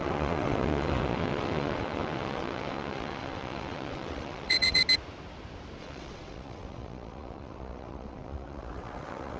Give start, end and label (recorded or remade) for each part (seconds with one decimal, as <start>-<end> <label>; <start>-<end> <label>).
0.0-4.8 remade; 4.8-5.8 recorded; 5.8-9.4 remade